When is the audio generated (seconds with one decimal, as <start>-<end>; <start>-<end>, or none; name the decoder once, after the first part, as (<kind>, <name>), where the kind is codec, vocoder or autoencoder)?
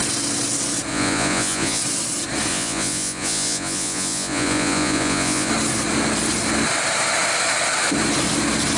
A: 0.9-1.8 (vocoder, Vocos); 2.5-5.5